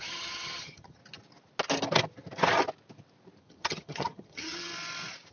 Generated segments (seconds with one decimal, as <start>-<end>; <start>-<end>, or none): 0.0-1.0; 3.4-4.7